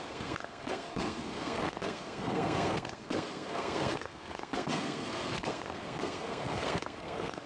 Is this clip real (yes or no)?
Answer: no